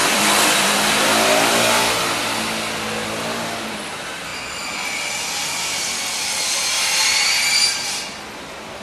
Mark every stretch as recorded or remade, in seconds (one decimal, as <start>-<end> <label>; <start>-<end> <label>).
0.0-0.9 remade; 0.9-8.8 recorded